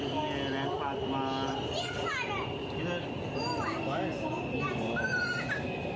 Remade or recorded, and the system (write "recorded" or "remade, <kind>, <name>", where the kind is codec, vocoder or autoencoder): recorded